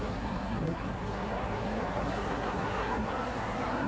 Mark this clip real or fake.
fake